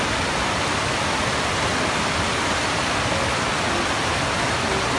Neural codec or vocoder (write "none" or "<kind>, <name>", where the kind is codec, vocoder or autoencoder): none